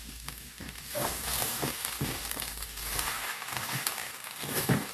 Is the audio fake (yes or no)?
yes